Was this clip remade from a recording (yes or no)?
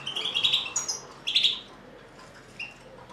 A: no